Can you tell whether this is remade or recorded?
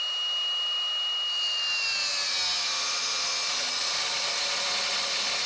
recorded